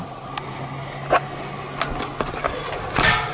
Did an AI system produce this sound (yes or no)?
no